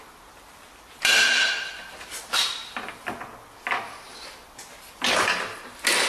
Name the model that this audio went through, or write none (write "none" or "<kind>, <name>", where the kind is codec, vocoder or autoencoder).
none